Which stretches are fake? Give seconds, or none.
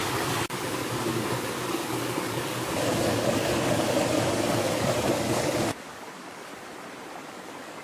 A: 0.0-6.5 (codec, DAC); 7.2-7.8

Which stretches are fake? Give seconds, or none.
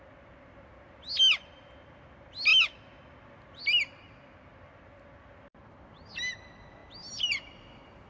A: none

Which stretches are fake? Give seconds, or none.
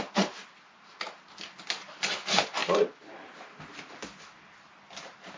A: none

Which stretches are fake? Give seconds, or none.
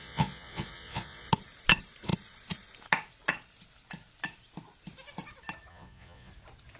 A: 0.0-1.3 (vocoder, Vocos); 5.7-6.3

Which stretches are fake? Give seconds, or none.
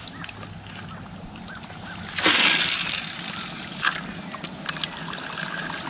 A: none